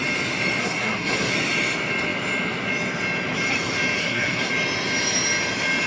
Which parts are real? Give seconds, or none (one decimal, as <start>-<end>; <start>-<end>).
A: 0.0-0.6; 1.3-4.0; 4.5-5.9